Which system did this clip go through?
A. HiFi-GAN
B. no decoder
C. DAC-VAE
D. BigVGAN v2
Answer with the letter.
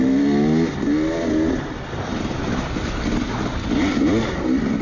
B